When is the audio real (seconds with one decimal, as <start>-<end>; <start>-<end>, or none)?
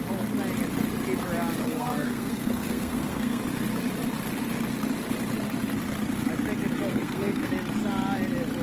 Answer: 0.0-1.6; 3.4-6.9; 7.5-8.6